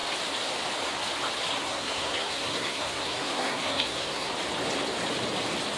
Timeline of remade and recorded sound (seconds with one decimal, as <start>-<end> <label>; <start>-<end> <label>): 0.0-1.6 recorded; 1.6-4.3 remade; 4.3-5.8 recorded